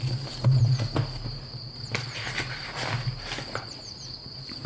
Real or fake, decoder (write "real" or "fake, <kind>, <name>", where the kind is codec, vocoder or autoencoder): real